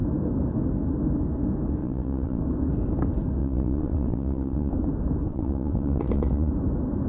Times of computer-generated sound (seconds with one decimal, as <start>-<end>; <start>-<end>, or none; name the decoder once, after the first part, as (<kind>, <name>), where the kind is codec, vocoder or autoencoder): 1.8-2.4 (vocoder, WaveNeXt); 3.4-4.7; 5.3-6.5